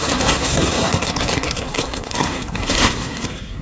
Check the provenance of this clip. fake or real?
fake